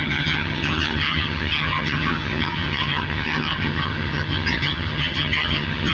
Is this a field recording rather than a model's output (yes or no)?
no